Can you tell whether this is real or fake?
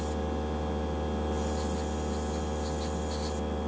real